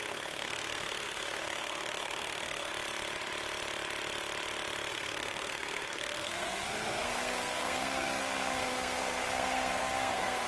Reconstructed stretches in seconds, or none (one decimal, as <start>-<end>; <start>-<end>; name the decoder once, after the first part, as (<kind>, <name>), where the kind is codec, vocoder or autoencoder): 0.0-2.7 (codec, SNAC); 4.9-10.5